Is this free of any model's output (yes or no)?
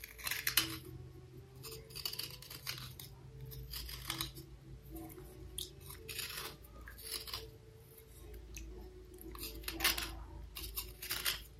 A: yes